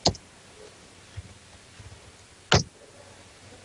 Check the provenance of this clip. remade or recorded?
recorded